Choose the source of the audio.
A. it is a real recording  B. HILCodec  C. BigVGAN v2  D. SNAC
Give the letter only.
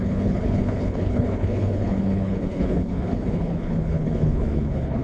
B